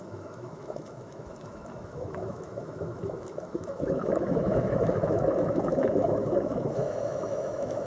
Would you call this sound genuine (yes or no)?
no